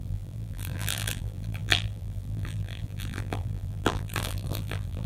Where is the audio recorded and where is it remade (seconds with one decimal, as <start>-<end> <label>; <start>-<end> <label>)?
0.0-5.1 remade